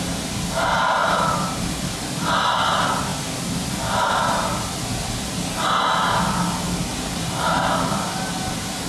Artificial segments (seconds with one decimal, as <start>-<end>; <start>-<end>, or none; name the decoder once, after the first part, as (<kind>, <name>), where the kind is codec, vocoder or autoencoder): 1.0-1.6 (vocoder, BigVGAN v2); 6.9-7.5